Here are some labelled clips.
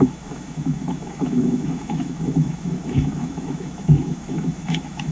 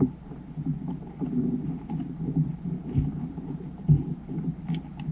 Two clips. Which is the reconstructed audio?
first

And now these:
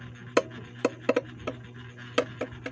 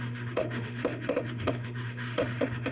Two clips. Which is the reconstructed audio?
second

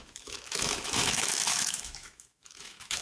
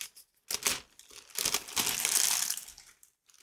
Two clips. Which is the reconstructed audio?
first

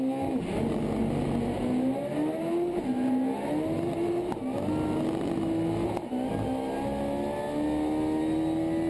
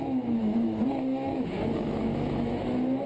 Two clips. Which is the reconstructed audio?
second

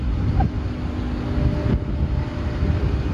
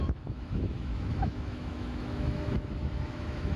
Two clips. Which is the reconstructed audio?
second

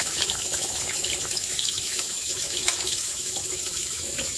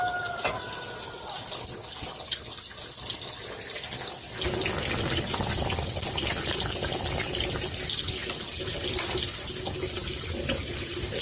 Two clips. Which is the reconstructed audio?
first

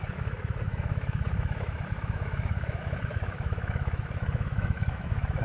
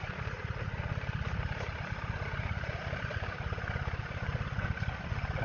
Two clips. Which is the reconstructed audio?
first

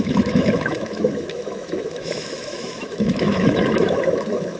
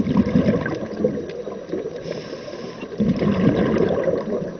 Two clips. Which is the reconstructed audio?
first